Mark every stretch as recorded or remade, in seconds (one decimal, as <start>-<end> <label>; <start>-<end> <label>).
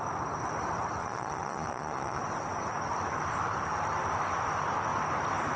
0.0-1.0 recorded; 1.0-2.2 remade; 2.2-5.6 recorded